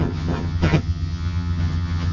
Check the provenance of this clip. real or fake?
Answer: fake